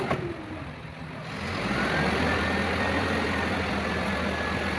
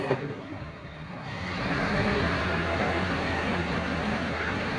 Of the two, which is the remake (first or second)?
second